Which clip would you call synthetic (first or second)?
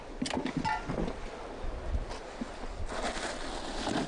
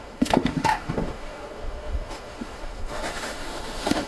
second